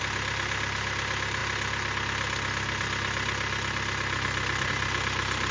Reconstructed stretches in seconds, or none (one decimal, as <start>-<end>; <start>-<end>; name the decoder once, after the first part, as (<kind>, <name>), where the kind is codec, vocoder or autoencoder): none

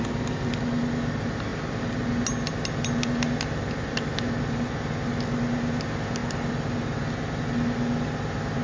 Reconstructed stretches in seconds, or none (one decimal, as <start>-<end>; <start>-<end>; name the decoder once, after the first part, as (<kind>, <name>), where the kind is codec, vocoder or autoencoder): none

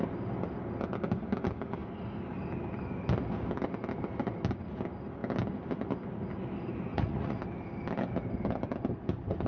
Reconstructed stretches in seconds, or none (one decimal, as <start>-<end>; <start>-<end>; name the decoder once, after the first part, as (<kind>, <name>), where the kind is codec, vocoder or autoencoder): 6.9-7.4 (vocoder, Vocos)

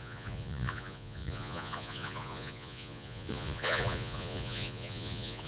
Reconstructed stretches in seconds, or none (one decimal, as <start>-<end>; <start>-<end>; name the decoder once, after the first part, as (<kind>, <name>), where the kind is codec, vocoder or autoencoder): 0.0-5.5 (vocoder, Vocos)

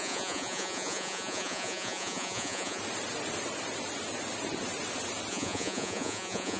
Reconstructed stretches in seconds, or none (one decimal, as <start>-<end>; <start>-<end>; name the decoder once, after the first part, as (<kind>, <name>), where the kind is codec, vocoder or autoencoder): 0.0-2.8 (vocoder, Vocos); 5.3-6.6

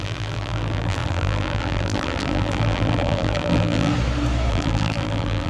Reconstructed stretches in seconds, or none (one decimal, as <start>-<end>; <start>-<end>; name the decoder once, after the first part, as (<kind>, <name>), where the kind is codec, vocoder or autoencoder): 0.0-3.9 (vocoder, BigVGAN v2); 4.5-5.5

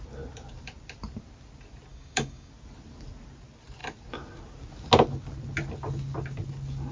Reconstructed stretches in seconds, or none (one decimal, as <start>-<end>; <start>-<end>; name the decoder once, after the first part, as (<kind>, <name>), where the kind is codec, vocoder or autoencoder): 1.9-2.5 (codec, DAC)

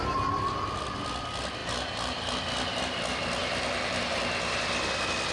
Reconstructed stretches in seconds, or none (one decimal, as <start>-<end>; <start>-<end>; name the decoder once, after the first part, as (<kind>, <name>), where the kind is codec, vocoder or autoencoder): 3.4-4.2 (vocoder, BigVGAN v2)